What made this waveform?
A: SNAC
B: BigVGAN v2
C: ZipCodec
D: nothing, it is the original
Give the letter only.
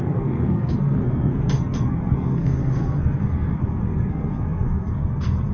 A